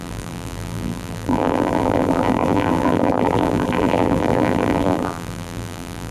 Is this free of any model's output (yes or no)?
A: no